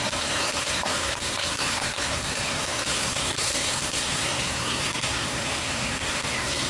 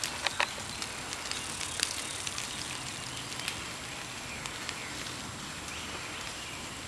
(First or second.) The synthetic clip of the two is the first